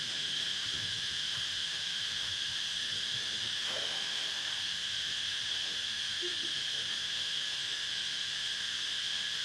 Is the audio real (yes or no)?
no